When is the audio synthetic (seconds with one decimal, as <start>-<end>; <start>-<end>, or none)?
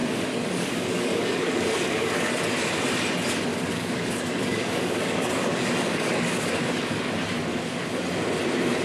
0.0-2.3; 3.5-7.1; 7.5-8.0